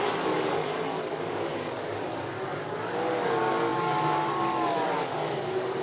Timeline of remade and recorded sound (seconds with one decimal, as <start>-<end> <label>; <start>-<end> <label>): 0.0-5.8 remade